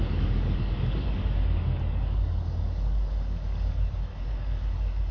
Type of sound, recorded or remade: remade